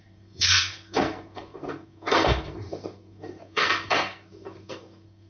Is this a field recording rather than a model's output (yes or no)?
no